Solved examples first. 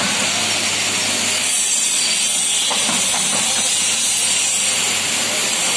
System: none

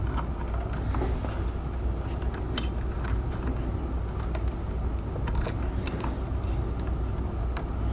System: none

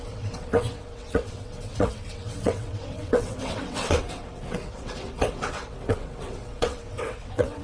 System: vocoder, WaveNeXt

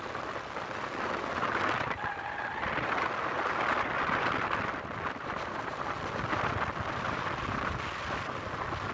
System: none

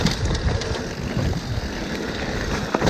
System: none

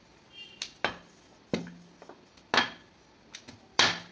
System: none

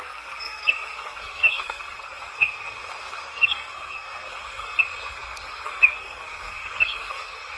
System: codec, SNAC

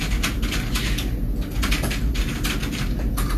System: none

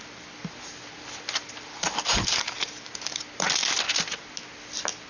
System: none